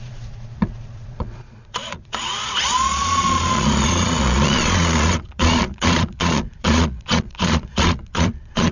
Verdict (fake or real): fake